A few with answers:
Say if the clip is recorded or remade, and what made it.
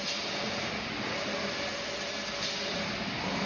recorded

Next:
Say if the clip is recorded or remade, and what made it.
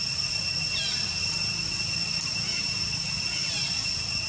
recorded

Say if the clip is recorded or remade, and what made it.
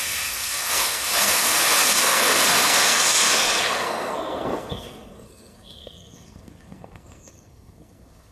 remade, codec, SNAC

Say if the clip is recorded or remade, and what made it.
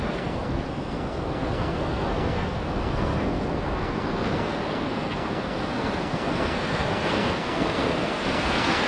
remade, codec, SNAC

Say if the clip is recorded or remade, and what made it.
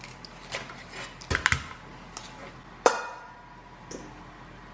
recorded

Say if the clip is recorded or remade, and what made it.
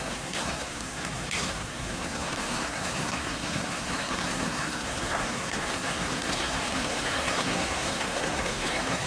remade, codec, SNAC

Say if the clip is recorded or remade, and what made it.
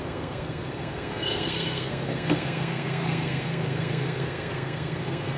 remade, codec, SNAC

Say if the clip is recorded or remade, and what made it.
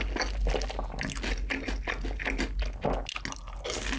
recorded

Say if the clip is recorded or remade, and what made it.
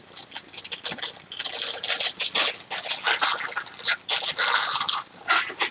recorded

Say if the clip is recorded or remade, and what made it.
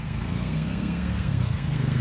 remade, codec, SNAC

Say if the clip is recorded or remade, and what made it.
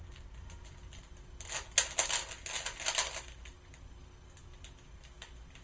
recorded